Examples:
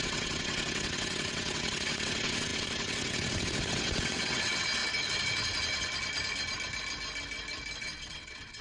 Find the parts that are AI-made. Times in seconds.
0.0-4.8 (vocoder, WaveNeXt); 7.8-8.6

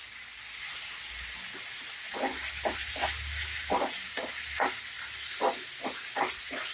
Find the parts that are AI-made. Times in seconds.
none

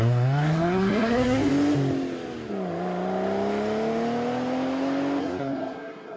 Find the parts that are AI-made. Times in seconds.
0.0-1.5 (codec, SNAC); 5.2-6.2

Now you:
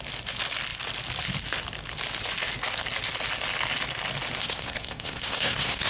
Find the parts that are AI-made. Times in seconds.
4.4-5.9 (codec, SNAC)

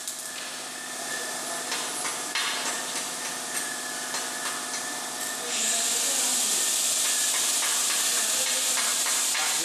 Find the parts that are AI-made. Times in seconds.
7.5-9.2 (vocoder, BigVGAN v2)